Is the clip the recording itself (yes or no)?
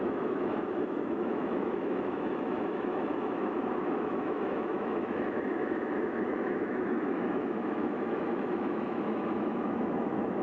no